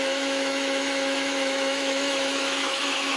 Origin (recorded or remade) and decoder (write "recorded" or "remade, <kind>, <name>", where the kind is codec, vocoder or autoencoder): remade, autoencoder, DAC-VAE